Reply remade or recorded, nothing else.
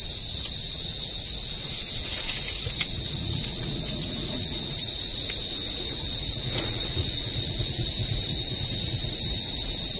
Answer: remade